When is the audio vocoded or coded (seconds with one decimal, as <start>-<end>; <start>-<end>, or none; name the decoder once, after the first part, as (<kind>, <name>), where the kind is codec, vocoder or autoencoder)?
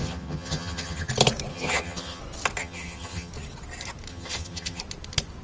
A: 0.0-1.1 (vocoder, HiFi-GAN); 1.5-2.2; 2.6-3.3; 4.1-4.8